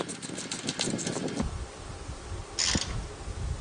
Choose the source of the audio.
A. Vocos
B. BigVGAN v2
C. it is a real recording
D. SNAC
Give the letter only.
C